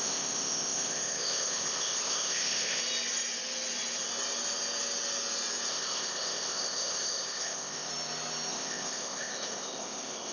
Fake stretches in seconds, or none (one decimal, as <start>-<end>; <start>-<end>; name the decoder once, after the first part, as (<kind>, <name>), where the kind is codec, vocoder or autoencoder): 0.0-2.8 (codec, ZipCodec); 5.7-7.9; 8.5-10.3